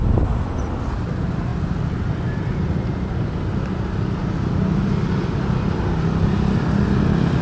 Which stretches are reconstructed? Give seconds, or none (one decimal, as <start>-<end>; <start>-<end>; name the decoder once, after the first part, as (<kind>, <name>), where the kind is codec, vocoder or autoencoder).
none